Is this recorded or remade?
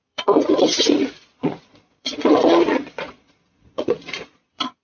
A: remade